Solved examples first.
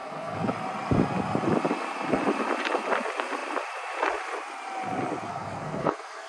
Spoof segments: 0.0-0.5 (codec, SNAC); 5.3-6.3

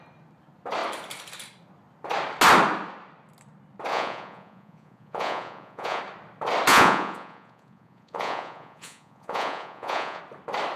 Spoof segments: 3.9-6.0 (vocoder, Vocos); 6.7-10.2